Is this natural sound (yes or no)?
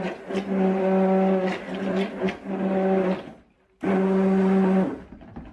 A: yes